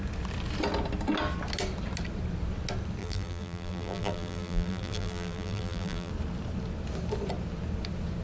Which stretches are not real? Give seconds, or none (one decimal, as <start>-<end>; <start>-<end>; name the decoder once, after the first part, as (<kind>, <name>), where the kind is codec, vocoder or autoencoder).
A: 3.0-6.1 (vocoder, BigVGAN v2)